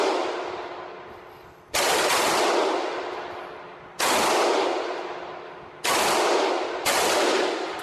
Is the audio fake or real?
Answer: real